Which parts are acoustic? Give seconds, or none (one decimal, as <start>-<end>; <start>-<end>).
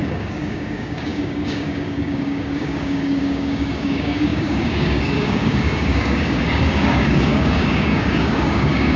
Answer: none